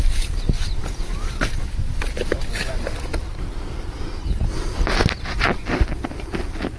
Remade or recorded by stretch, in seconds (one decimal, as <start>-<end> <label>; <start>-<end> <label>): 0.0-6.8 recorded